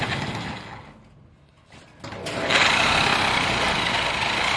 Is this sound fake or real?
real